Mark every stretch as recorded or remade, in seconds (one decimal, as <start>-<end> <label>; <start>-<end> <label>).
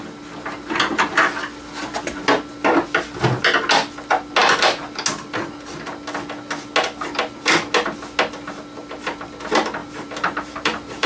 0.0-9.8 recorded; 9.8-11.1 remade